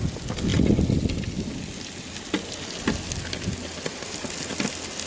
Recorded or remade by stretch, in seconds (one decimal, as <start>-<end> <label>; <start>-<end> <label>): 0.0-5.1 recorded